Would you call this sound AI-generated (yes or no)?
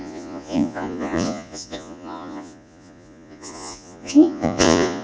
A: yes